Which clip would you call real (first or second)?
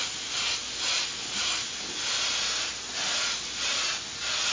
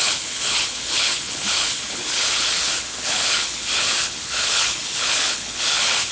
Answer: first